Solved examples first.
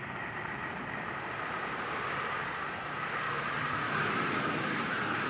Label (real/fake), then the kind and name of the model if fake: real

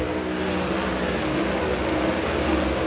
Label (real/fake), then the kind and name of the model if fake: real